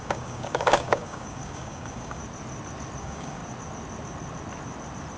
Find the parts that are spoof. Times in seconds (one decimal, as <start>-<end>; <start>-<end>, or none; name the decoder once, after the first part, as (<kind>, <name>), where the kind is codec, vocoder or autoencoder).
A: 0.0-2.2 (codec, DAC); 3.0-3.4